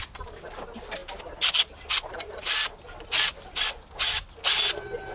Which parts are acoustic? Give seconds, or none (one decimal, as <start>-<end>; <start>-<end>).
0.0-5.1